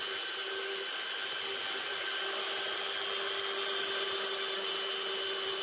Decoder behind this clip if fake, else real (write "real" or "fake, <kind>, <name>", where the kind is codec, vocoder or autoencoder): real